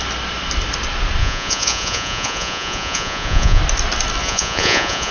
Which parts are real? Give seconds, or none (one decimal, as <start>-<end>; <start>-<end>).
0.0-1.2; 3.6-4.2